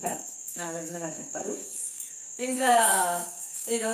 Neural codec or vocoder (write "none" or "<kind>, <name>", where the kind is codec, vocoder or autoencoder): codec, SNAC